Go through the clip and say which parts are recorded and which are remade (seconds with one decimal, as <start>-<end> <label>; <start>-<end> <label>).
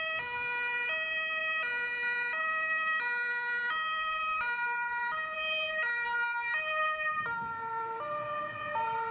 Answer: 0.0-9.1 recorded